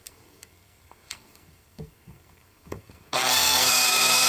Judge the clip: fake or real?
fake